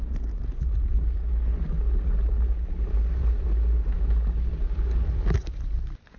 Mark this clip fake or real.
real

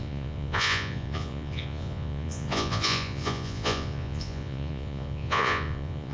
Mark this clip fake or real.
fake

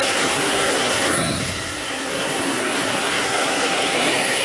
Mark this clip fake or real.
fake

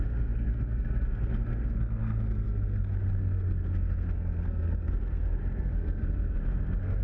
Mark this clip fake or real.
fake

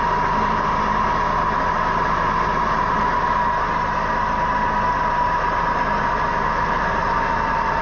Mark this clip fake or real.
fake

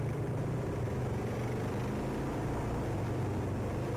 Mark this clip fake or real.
real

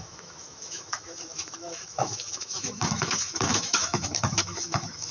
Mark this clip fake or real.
fake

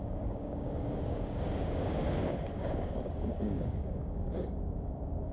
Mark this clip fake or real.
fake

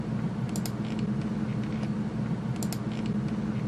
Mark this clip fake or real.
real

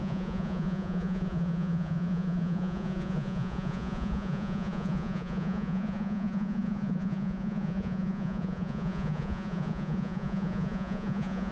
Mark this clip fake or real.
fake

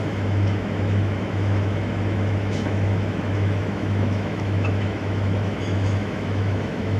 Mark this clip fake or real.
fake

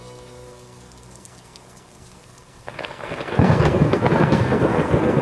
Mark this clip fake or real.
fake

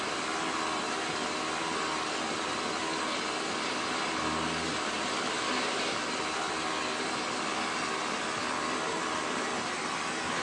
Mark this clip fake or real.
real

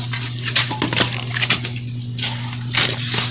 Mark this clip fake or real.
real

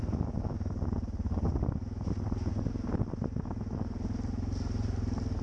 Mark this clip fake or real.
real